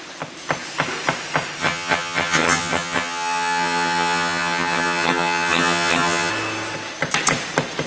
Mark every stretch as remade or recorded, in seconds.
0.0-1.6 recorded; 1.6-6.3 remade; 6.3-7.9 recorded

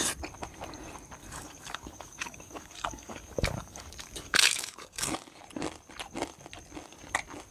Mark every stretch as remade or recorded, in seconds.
0.0-1.2 recorded; 1.2-5.4 remade; 5.4-7.5 recorded

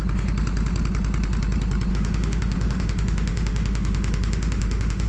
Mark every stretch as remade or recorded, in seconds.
0.0-1.9 recorded; 1.9-5.1 remade

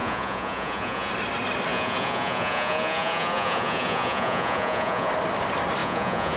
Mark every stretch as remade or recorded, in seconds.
0.0-1.1 remade; 1.1-1.7 recorded; 1.7-5.1 remade; 5.1-5.8 recorded; 5.8-6.4 remade

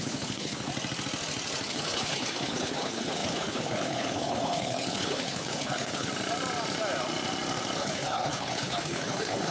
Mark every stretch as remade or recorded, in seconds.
0.0-0.7 remade; 0.7-1.7 recorded; 1.7-6.1 remade; 6.1-7.8 recorded; 7.8-9.5 remade